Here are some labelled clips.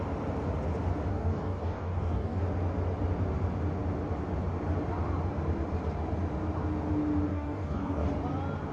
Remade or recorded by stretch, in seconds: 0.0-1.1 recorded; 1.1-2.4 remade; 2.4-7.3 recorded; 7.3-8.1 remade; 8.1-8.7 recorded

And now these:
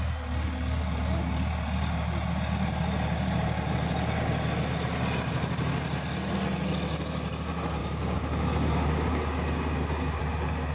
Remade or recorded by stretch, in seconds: 0.0-7.8 recorded; 7.8-10.2 remade; 10.2-10.7 recorded

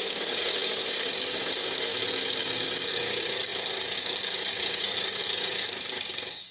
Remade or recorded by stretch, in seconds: 0.0-1.9 remade; 1.9-2.4 recorded; 2.4-6.5 remade

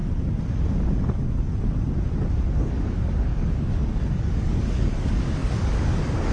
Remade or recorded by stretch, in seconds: 0.0-2.7 recorded; 2.7-6.3 remade

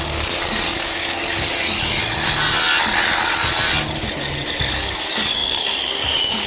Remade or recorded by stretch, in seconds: 0.0-2.0 remade; 2.0-4.7 recorded; 4.7-6.5 remade

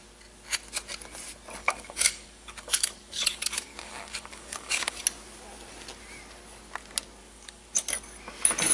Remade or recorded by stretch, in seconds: 0.0-1.6 recorded; 1.6-5.0 remade; 5.0-7.2 recorded; 7.2-7.8 remade; 7.8-8.7 recorded